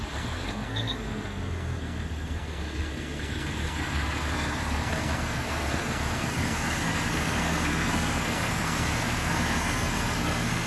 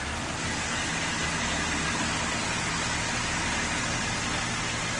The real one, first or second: second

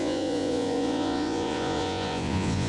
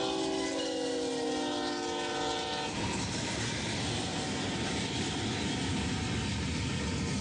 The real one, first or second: second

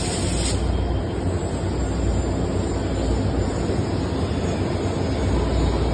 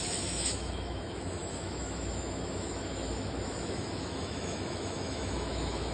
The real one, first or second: first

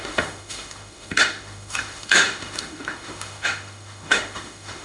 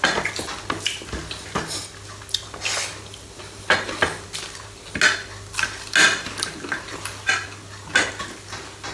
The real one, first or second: second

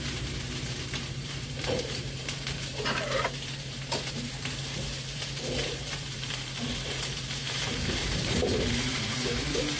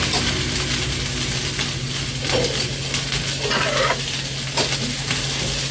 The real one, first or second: second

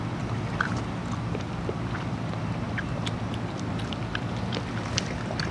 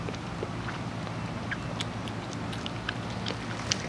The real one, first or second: second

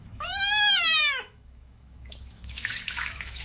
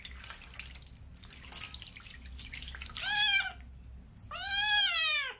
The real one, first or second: second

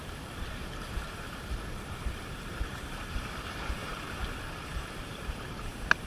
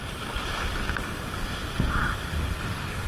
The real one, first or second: second